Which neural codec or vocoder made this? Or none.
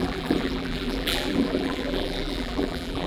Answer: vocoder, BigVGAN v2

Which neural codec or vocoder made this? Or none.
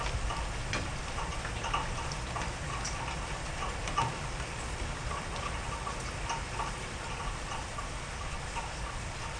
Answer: none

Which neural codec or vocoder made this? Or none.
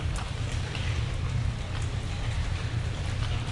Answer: vocoder, BigVGAN v2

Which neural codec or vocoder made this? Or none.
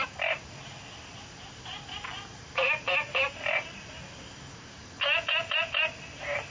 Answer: none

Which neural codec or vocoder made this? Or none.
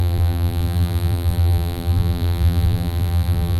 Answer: vocoder, BigVGAN v2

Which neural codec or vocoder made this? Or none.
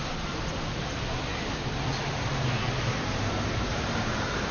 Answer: vocoder, BigVGAN v2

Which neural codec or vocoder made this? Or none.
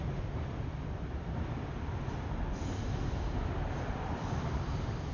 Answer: vocoder, BigVGAN v2